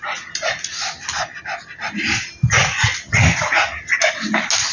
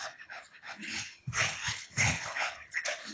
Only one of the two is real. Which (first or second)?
first